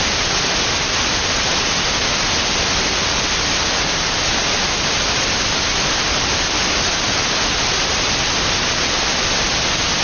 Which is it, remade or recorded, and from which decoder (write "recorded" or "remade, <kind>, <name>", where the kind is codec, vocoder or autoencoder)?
recorded